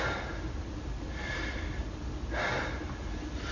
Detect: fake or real real